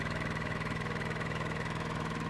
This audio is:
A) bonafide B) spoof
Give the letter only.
B